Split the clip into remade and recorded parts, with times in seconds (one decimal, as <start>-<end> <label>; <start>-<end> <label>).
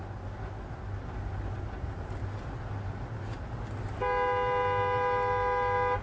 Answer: 0.0-6.0 recorded